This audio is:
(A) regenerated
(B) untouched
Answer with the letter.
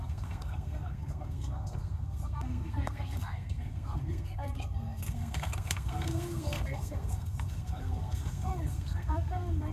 A